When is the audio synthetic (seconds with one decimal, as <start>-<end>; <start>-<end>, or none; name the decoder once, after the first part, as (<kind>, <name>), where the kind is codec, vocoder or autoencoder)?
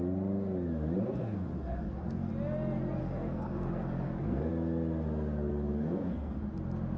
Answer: 1.2-2.3 (codec, SNAC); 3.0-4.5; 5.5-6.4